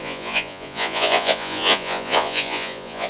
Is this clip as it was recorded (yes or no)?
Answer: no